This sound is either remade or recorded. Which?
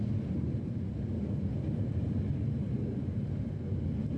recorded